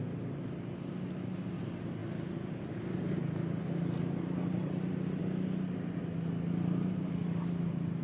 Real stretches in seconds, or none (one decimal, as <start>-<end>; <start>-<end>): 0.0-8.0